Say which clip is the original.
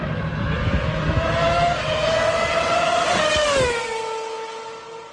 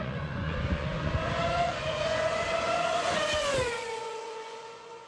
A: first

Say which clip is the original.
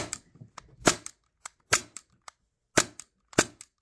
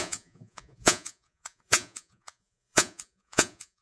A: first